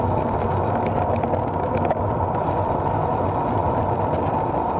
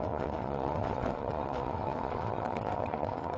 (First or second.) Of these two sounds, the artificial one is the second